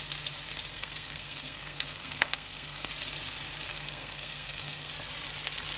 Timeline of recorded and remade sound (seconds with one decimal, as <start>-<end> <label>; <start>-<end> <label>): 0.0-0.7 recorded; 0.7-2.9 remade; 2.9-3.7 recorded; 3.7-4.9 remade; 4.9-5.8 recorded